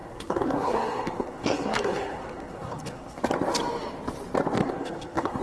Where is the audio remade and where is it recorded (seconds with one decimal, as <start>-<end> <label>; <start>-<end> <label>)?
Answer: 0.0-3.2 remade; 3.2-4.6 recorded; 4.6-5.4 remade